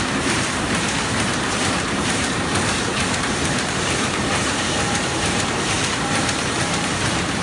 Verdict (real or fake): fake